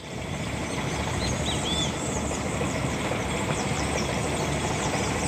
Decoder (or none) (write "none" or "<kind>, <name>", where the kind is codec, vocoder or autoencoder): vocoder, BigVGAN v2